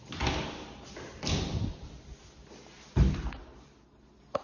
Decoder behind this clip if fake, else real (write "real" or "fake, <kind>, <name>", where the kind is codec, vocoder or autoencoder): real